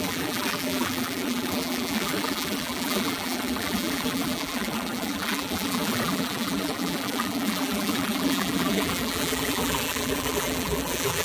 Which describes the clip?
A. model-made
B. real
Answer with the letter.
A